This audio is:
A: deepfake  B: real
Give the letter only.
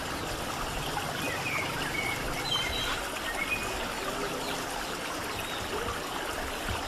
B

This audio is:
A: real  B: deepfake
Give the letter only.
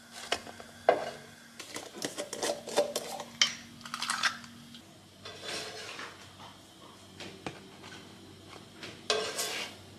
A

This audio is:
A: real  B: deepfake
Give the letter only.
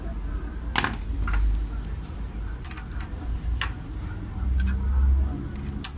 A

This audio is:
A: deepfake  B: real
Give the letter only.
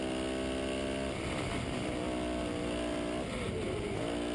B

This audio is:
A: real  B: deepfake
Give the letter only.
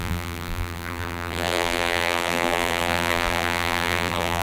B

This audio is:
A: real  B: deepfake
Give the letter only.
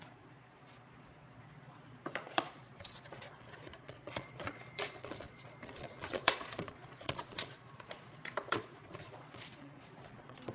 B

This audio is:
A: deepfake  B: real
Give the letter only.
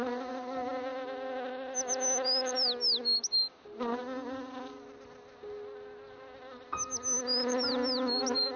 B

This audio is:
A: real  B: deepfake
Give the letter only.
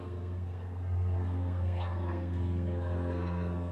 B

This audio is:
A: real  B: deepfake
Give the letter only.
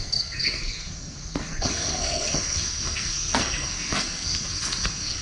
B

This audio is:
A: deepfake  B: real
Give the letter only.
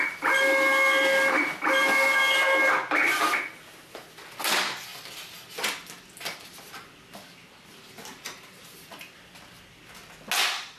B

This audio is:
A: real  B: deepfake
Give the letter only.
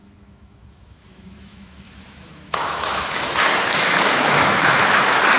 B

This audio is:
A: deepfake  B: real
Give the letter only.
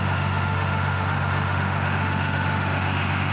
A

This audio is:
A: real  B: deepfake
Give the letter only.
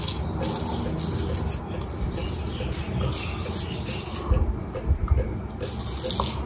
A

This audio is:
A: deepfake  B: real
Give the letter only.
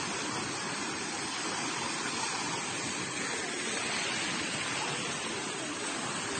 B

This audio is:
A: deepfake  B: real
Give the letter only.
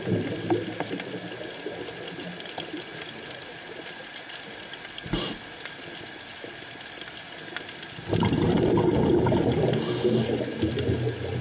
B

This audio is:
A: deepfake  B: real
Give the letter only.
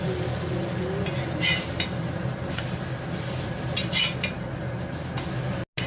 B